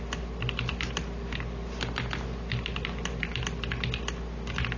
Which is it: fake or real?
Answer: real